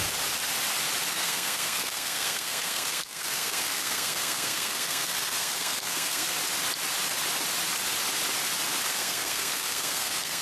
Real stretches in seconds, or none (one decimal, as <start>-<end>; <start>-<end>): 0.0-1.1; 6.4-8.9